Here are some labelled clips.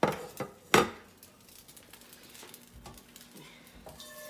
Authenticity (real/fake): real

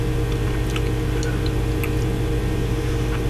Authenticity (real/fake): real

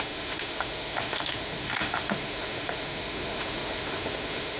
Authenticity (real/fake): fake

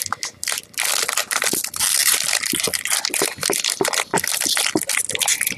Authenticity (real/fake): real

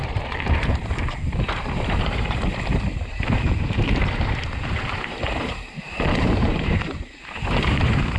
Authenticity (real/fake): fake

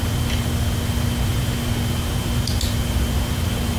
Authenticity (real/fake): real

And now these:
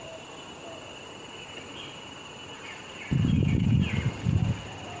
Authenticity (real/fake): real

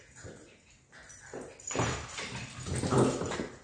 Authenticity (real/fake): real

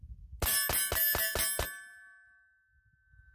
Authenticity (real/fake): real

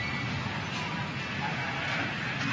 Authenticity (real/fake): real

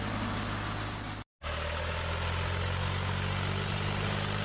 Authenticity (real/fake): real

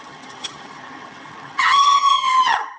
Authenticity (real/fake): fake